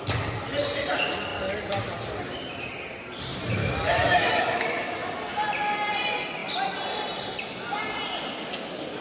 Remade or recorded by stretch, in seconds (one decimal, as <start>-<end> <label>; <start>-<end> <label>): 0.0-3.6 recorded; 3.6-5.0 remade; 5.0-9.0 recorded